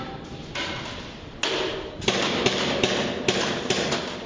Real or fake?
real